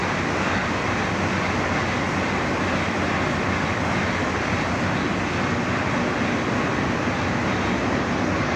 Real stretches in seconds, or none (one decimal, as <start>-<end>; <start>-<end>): 0.0-8.6